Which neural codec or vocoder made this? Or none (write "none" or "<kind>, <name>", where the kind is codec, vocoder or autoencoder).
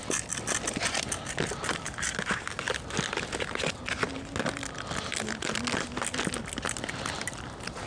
none